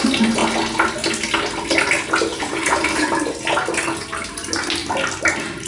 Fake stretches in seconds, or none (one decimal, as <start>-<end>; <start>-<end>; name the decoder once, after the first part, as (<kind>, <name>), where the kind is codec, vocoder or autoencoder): 2.3-3.1 (vocoder, BigVGAN v2)